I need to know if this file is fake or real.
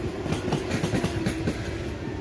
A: real